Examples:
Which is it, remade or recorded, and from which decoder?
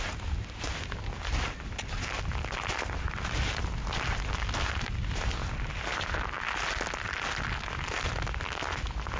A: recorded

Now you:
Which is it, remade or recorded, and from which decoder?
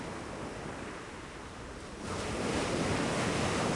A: recorded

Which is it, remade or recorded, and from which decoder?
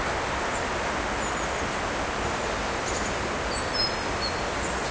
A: recorded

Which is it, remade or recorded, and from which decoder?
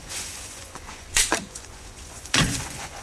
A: remade, vocoder, Vocos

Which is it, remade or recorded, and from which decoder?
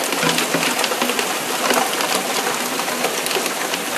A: recorded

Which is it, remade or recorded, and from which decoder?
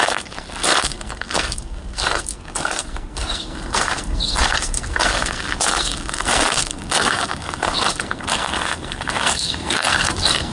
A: remade, codec, SNAC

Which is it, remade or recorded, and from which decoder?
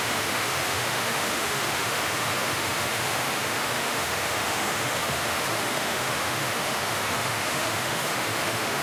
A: remade, autoencoder, DAC-VAE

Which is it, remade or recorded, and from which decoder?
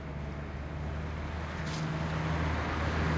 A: recorded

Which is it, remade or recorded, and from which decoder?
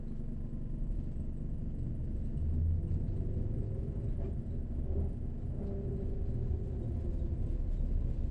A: recorded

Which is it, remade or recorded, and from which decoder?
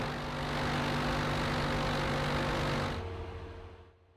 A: recorded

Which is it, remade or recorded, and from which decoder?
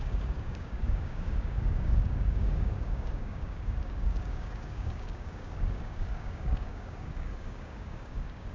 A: remade, codec, DAC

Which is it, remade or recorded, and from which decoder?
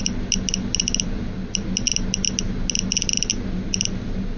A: recorded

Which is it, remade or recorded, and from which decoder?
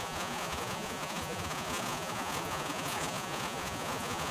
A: remade, vocoder, Vocos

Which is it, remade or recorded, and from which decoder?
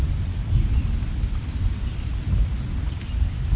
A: remade, vocoder, BigVGAN v2